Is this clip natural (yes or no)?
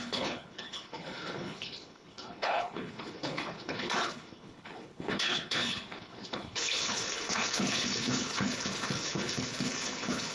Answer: no